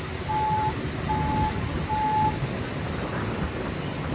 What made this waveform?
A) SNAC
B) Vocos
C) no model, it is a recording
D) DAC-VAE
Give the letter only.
C